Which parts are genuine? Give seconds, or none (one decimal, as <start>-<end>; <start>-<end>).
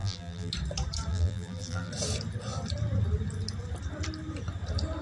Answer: 0.5-1.1; 1.9-5.0